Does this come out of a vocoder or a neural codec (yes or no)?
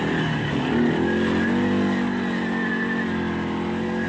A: no